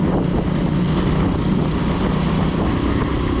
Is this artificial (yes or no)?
no